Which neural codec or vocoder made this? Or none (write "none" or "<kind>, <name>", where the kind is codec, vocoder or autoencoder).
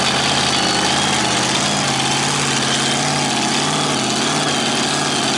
none